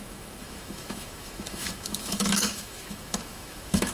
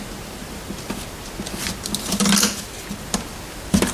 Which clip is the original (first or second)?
second